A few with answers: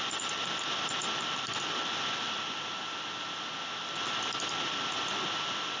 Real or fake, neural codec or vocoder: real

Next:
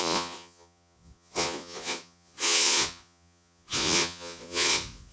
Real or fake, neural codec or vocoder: fake, vocoder, Vocos